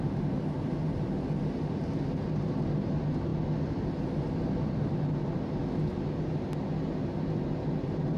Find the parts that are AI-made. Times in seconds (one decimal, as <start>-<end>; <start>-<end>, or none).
none